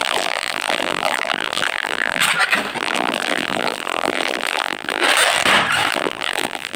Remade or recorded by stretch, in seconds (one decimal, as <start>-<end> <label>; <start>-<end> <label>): 0.0-2.2 remade; 2.2-2.8 recorded; 2.8-5.0 remade; 5.0-5.9 recorded; 5.9-6.8 remade